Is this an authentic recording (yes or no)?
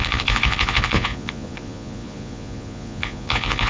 no